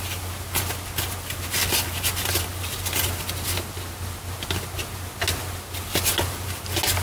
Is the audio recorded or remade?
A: recorded